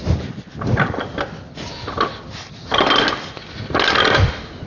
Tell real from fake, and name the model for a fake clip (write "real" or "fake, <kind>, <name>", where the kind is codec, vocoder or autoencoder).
real